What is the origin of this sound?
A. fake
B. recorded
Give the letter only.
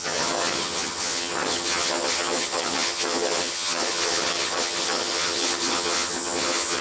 A